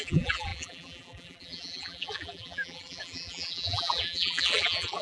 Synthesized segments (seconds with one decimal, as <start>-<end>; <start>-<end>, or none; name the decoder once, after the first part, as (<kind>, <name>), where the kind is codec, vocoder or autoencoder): 0.0-5.0 (vocoder, BigVGAN v2)